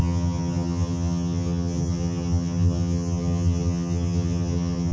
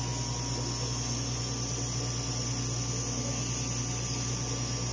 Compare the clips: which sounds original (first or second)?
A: second